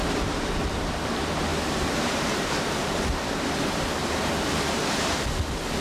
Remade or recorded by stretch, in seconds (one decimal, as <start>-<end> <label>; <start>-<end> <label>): 0.0-1.0 remade; 1.0-1.5 recorded; 1.5-3.4 remade; 3.4-4.0 recorded; 4.0-5.1 remade; 5.1-5.8 recorded